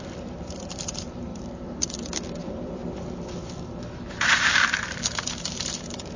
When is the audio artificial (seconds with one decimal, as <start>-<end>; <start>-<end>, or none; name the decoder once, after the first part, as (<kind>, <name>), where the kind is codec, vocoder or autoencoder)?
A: 0.0-1.3 (vocoder, BigVGAN v2); 4.1-6.2